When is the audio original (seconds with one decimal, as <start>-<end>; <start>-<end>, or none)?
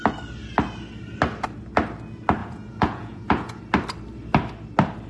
0.0-2.4; 3.6-5.1